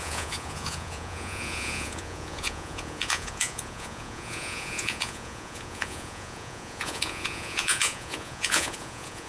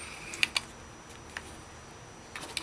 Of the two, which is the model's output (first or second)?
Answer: first